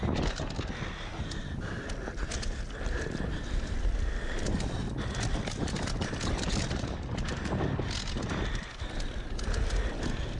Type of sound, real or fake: real